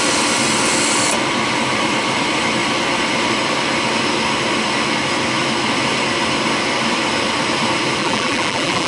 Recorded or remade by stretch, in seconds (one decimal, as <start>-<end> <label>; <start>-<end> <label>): 0.0-8.0 recorded; 8.0-8.9 remade